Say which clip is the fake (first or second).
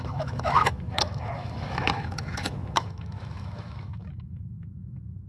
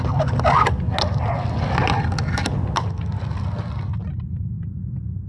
first